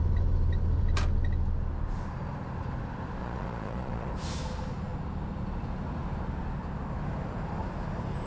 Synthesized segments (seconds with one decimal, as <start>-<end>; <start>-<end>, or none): 3.2-4.1